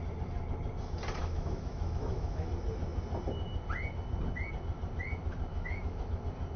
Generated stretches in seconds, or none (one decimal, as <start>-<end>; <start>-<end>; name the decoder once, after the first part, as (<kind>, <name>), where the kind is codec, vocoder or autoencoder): 1.2-2.5 (autoencoder, DAC-VAE); 5.5-6.1